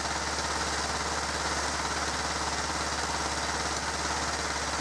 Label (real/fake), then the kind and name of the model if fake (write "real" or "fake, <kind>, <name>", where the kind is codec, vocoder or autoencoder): real